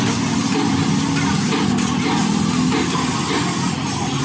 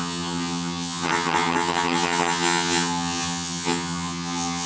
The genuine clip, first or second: first